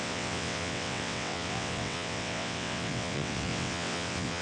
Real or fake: fake